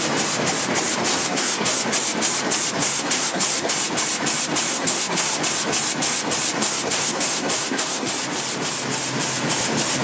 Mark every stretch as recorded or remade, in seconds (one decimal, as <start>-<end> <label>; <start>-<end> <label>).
0.0-1.1 recorded; 1.1-1.8 remade; 1.8-2.8 recorded; 2.8-3.7 remade; 3.7-4.7 recorded; 4.7-5.4 remade; 5.4-6.6 recorded; 6.6-8.1 remade; 8.1-10.0 recorded